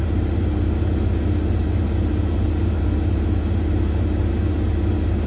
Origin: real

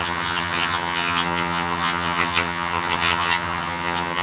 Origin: fake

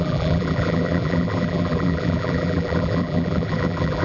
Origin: fake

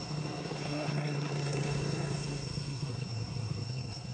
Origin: fake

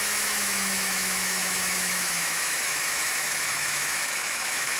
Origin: fake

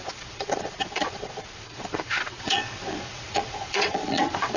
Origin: fake